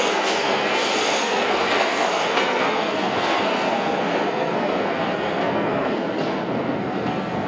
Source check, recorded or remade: remade